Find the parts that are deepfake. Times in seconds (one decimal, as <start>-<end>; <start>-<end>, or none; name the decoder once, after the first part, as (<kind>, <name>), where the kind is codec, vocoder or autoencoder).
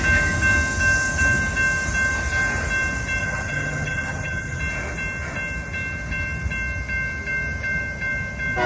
3.2-4.6 (vocoder, HiFi-GAN)